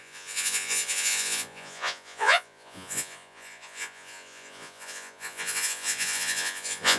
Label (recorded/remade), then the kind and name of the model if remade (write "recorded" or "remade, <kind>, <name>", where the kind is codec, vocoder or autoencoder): remade, vocoder, Vocos